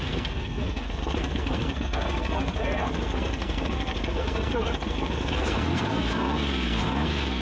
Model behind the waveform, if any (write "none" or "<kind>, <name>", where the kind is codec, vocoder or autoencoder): codec, SNAC